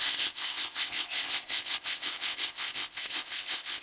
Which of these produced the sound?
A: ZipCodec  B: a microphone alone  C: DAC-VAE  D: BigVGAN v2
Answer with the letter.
A